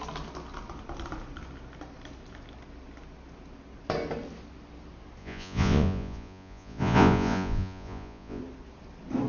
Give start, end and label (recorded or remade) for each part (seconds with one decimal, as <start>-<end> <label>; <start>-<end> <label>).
0.0-5.2 recorded; 5.2-8.4 remade; 8.4-9.3 recorded